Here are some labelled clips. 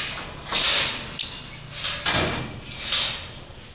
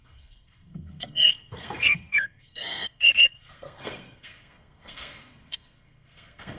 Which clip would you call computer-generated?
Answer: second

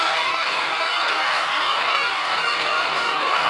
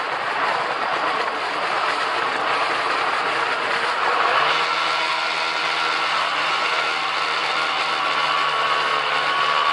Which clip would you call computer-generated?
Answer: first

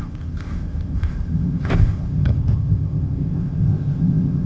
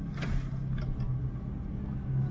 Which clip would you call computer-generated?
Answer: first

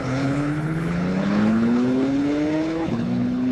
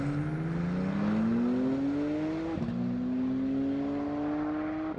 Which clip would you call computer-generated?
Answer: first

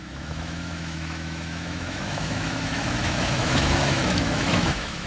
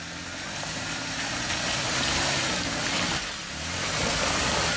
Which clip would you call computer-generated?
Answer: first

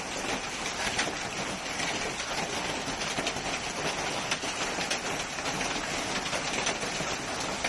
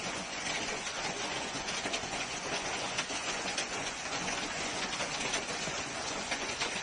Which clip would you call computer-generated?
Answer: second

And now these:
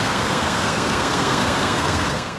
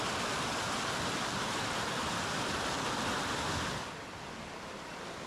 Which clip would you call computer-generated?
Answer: first